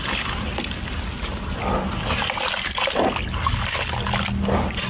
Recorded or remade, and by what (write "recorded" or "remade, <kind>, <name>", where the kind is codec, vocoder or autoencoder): recorded